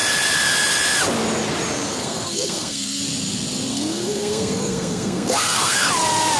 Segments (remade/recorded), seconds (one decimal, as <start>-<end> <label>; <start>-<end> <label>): 0.0-1.9 recorded; 1.9-3.0 remade; 3.0-3.7 recorded; 3.7-5.9 remade; 5.9-6.4 recorded